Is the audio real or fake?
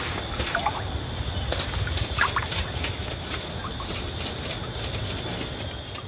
real